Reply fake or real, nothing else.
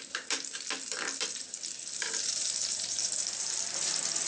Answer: fake